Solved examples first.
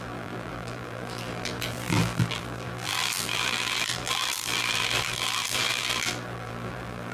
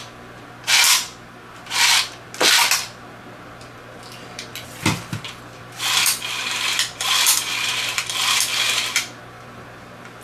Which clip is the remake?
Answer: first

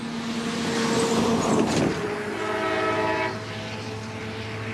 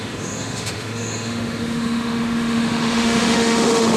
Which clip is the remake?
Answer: second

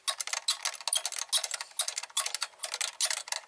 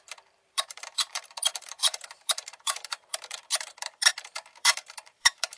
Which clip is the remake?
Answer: second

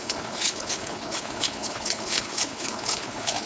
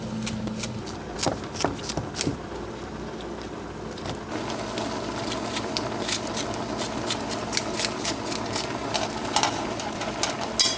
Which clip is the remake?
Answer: first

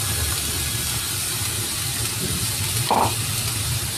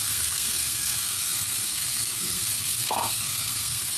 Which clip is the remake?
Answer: second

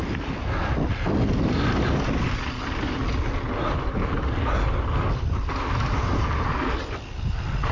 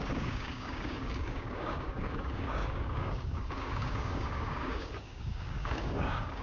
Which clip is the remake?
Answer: second